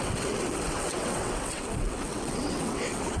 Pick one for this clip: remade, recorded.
remade